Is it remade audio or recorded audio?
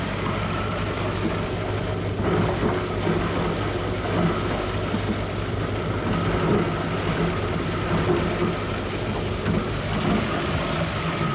recorded